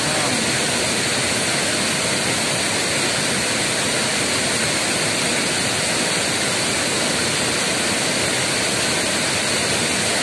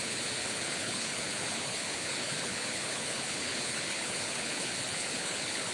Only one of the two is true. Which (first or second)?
first